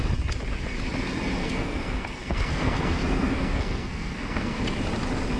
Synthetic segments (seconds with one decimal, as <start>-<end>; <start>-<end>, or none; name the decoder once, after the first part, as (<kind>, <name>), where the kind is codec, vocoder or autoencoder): 1.4-4.6 (codec, SNAC)